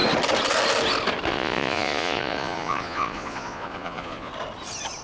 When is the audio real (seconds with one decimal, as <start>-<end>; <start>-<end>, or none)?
0.0-1.3; 4.3-5.0